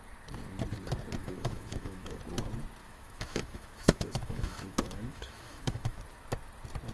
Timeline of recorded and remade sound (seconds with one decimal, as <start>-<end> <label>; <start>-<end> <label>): 0.0-1.2 recorded; 1.2-2.2 remade; 2.2-2.8 recorded; 2.8-6.0 remade; 6.0-6.9 recorded